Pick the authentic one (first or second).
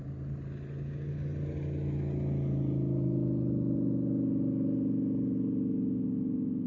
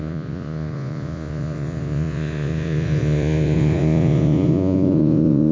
first